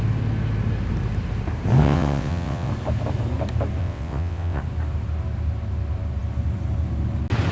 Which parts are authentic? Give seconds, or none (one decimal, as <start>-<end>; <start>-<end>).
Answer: 0.0-1.8; 2.7-3.8; 4.6-7.5